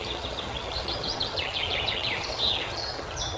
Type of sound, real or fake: fake